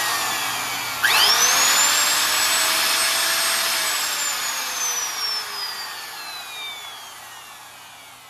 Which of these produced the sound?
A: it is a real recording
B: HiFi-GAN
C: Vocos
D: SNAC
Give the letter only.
A